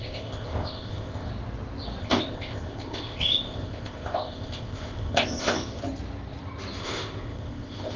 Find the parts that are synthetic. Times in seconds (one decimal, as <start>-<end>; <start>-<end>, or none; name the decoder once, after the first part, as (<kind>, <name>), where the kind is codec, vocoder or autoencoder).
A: 0.0-1.3 (codec, ZipCodec); 2.0-5.8; 6.8-8.0